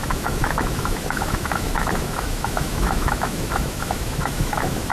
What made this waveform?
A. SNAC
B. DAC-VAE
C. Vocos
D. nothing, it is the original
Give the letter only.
B